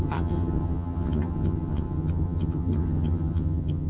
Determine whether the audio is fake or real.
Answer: fake